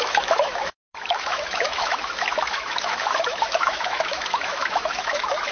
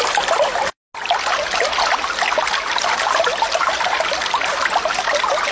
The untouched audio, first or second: second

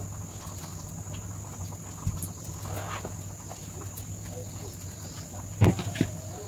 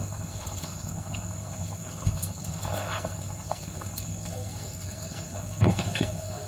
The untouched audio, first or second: first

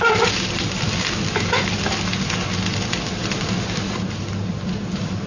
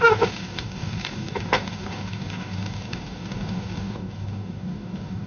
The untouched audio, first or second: first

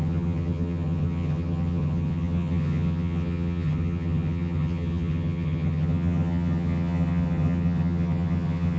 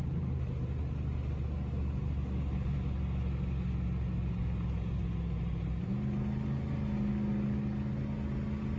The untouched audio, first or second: second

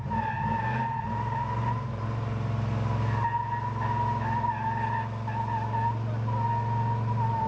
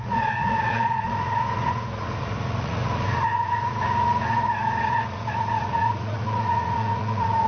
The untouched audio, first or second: first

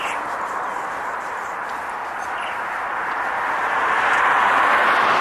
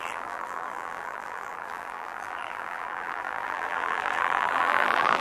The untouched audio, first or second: first